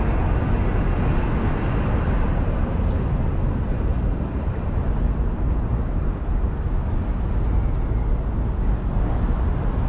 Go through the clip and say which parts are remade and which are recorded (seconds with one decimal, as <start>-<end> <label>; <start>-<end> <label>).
0.0-3.9 recorded; 3.9-5.0 remade; 5.0-5.7 recorded; 5.7-6.6 remade; 6.6-9.9 recorded